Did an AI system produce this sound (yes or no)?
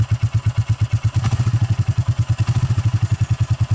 no